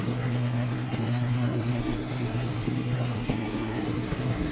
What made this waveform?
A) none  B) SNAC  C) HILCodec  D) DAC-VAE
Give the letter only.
B